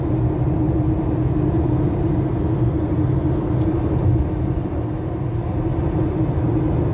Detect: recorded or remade recorded